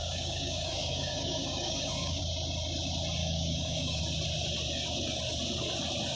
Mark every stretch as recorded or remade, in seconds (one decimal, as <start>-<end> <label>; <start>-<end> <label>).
0.0-2.2 remade; 2.2-3.2 recorded; 3.2-4.0 remade; 4.0-6.2 recorded